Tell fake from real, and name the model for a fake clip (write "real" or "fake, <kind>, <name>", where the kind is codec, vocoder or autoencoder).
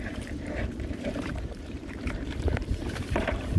fake, vocoder, BigVGAN v2